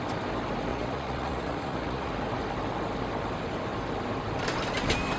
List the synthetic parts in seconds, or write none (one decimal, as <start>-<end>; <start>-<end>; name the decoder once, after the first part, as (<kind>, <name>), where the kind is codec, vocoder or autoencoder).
0.7-2.1 (vocoder, Vocos)